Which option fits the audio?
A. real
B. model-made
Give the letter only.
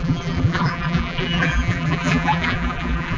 B